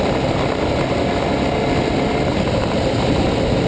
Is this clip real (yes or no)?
yes